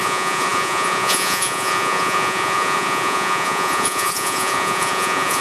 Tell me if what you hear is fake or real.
fake